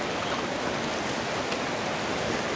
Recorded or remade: recorded